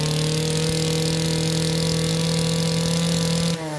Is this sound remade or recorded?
recorded